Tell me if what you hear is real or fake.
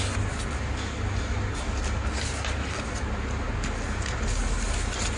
real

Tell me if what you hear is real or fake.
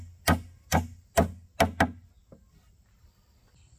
real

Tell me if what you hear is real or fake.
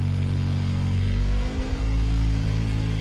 fake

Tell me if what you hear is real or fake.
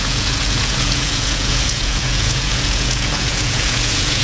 fake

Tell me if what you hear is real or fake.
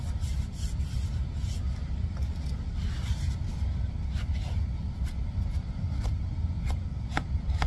real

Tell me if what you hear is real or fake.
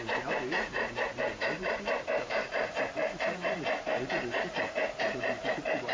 fake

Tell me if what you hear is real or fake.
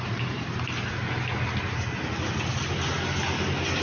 real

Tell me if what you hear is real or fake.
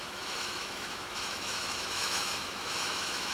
fake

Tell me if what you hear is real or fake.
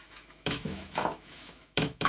fake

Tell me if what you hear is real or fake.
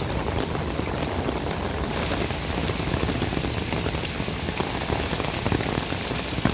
real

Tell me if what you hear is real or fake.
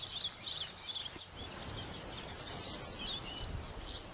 real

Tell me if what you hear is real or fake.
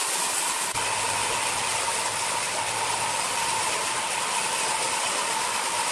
real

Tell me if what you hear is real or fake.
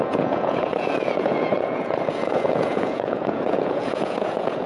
fake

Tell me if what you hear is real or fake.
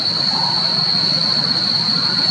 fake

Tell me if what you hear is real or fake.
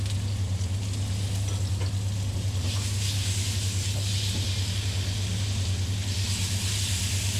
real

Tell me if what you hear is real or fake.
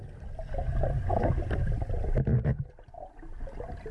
real